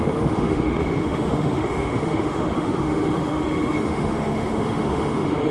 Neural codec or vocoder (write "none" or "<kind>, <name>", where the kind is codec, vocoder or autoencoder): autoencoder, DAC-VAE